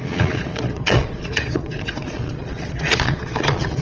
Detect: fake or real fake